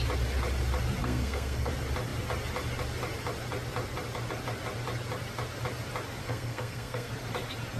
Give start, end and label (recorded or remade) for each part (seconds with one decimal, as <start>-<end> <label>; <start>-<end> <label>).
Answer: 0.0-1.0 recorded; 1.0-1.7 remade; 1.7-6.2 recorded; 6.2-7.1 remade; 7.1-7.8 recorded